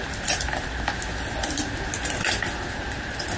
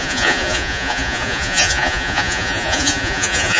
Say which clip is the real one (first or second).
first